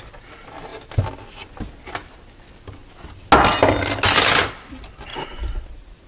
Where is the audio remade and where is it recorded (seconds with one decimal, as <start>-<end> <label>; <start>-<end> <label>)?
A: 0.0-5.1 recorded; 5.1-6.1 remade